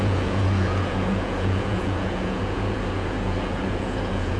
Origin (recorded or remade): remade